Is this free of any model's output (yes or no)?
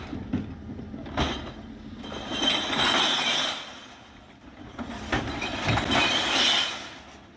yes